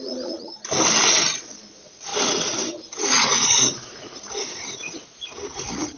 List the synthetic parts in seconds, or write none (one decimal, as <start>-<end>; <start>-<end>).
0.0-0.5; 1.7-6.0

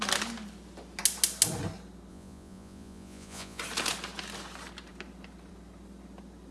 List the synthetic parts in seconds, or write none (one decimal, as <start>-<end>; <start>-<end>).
2.1-3.6

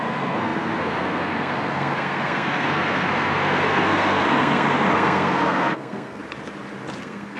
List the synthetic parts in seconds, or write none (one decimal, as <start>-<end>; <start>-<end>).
0.0-6.2; 7.0-7.4